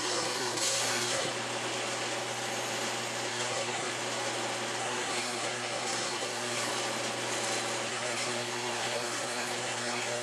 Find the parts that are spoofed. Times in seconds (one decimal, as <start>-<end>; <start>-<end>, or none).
0.0-1.3; 3.3-3.9; 4.8-6.7; 7.9-10.2